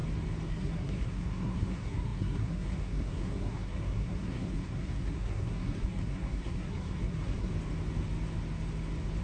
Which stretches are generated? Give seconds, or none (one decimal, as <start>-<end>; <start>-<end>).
0.5-7.5